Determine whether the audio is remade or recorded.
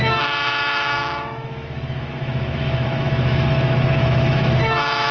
remade